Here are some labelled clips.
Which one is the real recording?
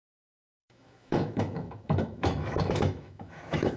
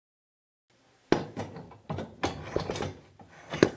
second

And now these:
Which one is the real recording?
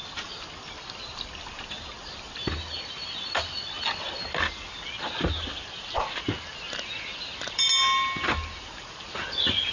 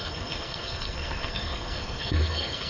first